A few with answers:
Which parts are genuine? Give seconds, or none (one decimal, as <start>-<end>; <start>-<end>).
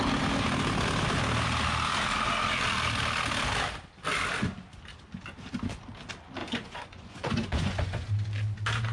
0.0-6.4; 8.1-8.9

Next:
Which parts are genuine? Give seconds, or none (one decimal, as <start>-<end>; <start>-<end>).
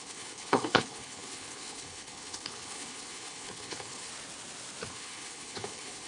4.1-4.9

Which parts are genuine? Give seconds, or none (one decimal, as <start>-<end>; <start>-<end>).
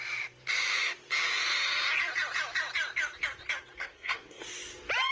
0.0-3.8; 4.4-5.1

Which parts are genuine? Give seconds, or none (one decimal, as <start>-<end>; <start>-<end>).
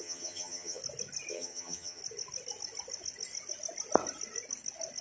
0.8-1.3; 2.0-5.0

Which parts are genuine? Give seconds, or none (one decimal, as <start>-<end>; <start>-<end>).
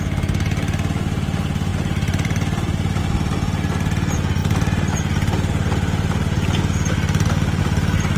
0.0-1.7; 3.0-8.2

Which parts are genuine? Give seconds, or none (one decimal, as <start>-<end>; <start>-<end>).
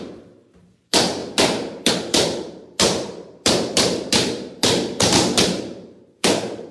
none